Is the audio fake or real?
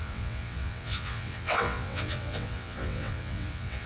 fake